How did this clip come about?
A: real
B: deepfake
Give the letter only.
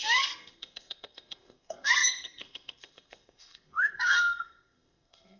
B